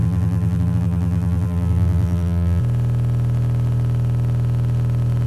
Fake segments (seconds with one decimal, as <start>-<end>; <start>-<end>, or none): 0.0-2.6